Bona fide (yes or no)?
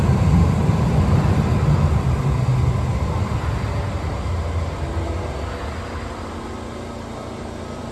yes